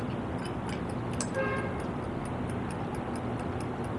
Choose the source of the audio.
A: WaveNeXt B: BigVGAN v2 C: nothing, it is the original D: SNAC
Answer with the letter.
C